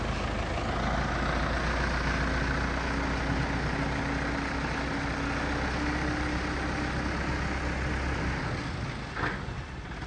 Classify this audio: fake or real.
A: real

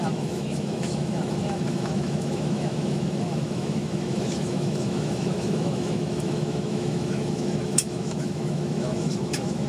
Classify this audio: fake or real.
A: fake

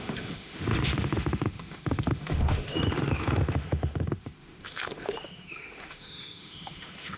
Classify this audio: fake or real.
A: fake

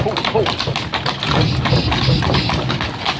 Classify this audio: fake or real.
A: real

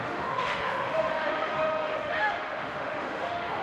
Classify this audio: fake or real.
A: fake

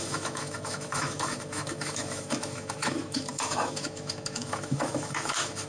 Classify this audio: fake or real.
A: fake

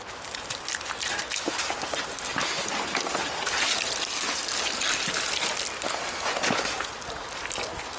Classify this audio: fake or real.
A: real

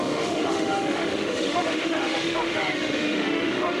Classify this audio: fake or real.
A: fake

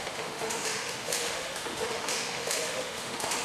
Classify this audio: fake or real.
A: fake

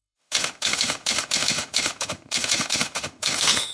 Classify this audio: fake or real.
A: fake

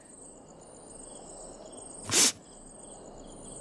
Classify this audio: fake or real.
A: real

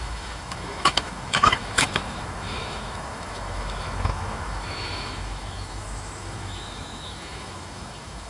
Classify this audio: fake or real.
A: fake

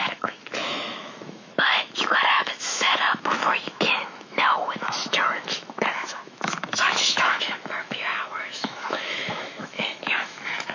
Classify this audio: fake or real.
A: fake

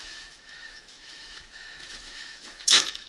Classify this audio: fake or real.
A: fake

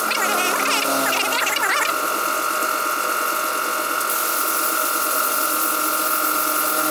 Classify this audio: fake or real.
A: real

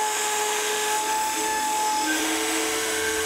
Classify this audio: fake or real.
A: fake